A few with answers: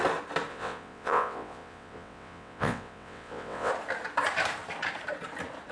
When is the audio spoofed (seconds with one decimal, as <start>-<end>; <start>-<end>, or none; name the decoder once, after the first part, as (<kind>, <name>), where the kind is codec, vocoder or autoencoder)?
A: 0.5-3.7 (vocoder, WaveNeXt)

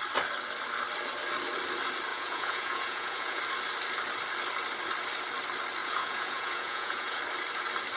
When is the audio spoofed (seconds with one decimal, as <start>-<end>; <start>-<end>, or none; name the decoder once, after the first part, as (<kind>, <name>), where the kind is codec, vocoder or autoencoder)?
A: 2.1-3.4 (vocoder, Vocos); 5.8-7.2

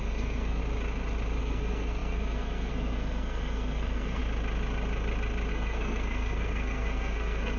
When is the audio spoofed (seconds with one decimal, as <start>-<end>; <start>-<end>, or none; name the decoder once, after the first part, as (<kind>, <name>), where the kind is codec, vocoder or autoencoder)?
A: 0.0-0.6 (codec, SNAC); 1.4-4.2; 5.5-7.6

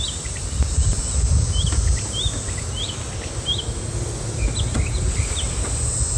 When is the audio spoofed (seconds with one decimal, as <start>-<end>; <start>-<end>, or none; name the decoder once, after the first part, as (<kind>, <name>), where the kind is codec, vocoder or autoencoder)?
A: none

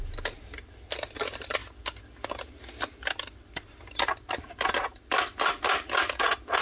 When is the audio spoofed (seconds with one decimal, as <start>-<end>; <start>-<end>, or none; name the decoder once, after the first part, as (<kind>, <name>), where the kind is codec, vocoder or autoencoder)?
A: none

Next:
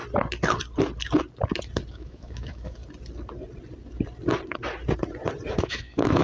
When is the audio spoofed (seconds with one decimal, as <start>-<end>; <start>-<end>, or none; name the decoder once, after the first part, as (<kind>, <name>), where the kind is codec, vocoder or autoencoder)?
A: 1.9-2.8 (autoencoder, DAC-VAE); 5.5-6.2

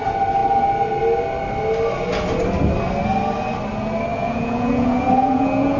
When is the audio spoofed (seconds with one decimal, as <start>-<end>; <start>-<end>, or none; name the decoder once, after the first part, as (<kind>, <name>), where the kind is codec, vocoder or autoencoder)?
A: 4.1-5.8 (vocoder, Vocos)

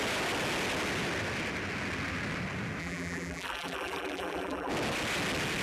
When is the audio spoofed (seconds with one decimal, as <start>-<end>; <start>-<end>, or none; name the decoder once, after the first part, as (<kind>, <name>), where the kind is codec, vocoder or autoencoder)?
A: 2.8-4.7 (vocoder, BigVGAN v2)